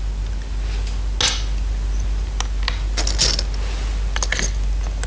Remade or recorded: recorded